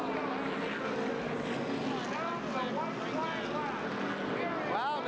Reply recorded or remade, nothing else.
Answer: recorded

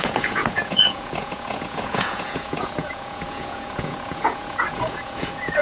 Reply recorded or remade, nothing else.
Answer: remade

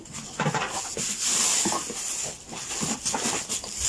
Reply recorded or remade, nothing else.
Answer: recorded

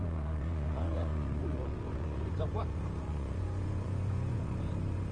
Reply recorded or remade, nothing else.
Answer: remade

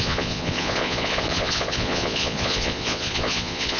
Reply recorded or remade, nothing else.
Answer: remade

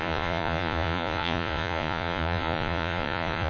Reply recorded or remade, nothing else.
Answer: remade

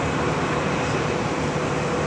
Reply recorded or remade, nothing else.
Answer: recorded